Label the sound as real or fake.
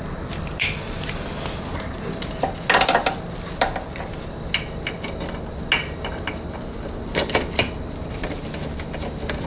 real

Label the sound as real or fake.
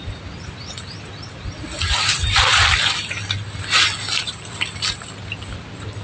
real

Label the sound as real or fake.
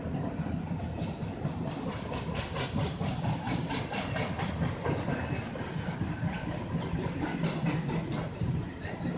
real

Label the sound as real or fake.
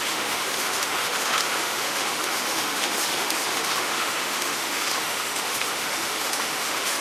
fake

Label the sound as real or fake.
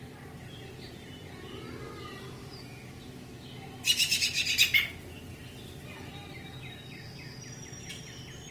real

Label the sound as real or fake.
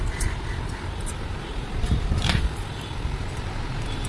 fake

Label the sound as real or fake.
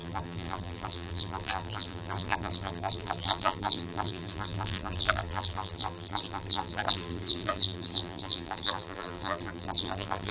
fake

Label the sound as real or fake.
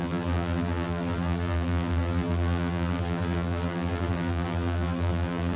fake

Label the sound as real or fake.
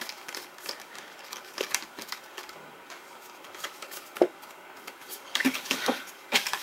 fake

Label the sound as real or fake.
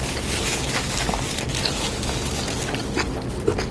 real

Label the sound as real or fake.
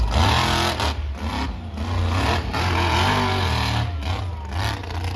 real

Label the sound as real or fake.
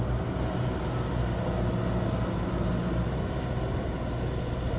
real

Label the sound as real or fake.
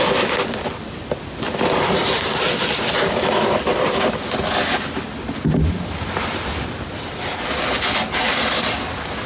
real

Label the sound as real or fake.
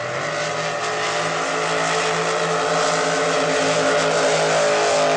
real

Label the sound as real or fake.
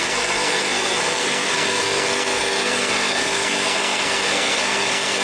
fake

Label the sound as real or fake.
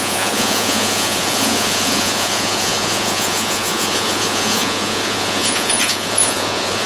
fake